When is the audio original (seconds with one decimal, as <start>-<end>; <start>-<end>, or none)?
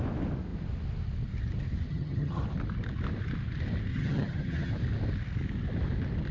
0.0-1.9; 2.4-3.9; 4.7-6.3